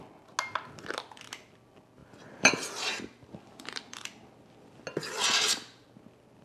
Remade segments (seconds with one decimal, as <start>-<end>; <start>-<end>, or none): 2.0-4.8